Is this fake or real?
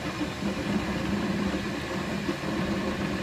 real